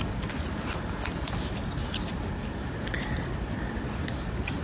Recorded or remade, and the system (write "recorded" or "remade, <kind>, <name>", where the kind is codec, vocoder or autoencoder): recorded